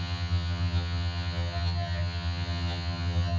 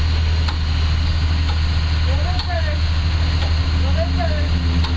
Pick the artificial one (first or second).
first